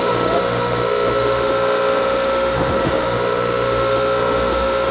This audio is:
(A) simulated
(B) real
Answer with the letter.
A